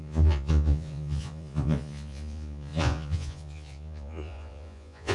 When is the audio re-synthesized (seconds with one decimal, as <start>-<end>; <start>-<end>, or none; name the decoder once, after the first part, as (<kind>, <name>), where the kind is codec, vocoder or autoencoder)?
0.0-5.1 (vocoder, Vocos)